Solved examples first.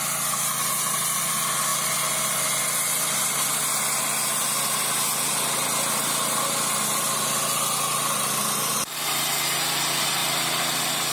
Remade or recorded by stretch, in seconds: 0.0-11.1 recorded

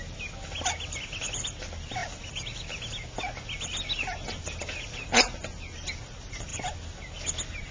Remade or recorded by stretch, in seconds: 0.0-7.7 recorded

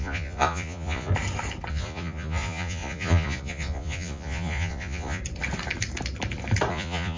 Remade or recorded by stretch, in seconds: 0.0-1.1 remade; 1.1-1.7 recorded; 1.7-5.2 remade; 5.2-6.7 recorded; 6.7-7.2 remade